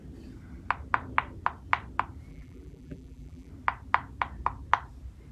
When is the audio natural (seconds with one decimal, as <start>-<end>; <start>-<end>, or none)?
0.0-2.3; 3.5-5.3